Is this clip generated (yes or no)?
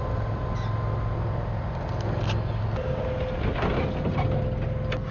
no